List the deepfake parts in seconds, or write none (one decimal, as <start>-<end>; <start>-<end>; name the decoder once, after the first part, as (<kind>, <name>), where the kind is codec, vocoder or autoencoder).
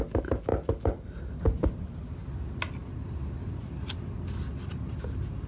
none